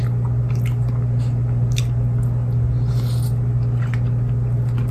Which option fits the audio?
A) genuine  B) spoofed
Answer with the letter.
A